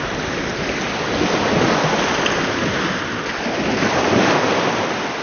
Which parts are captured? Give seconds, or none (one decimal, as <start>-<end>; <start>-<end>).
0.0-5.2